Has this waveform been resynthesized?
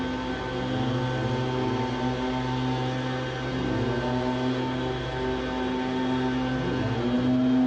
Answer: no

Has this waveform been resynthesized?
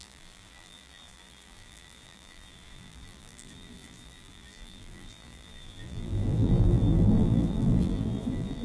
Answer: yes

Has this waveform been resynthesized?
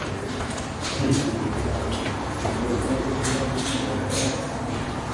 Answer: yes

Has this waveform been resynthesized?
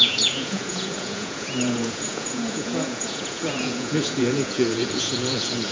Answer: yes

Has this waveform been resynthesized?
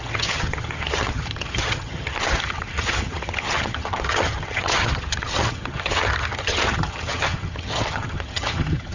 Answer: yes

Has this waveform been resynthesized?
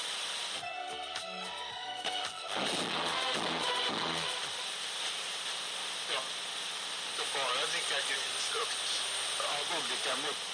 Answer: no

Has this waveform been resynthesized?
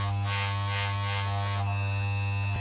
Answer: no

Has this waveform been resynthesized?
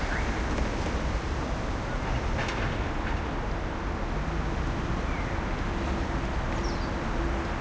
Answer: no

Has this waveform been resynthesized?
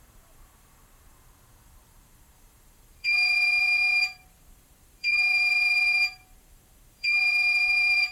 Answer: yes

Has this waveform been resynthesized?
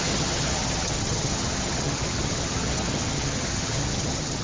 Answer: yes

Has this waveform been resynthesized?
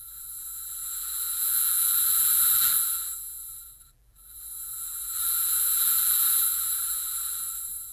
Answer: yes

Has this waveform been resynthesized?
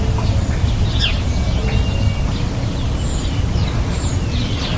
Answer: no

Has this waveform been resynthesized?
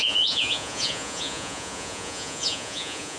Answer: yes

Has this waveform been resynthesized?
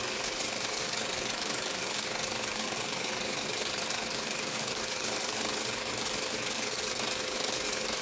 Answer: yes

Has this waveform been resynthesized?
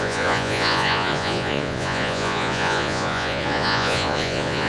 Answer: yes